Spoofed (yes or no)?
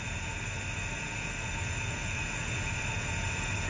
no